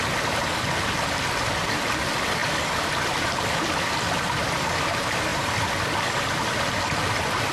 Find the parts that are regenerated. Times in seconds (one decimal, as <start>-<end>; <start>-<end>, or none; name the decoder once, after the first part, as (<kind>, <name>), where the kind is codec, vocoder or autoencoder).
2.4-4.2 (vocoder, BigVGAN v2); 5.3-6.5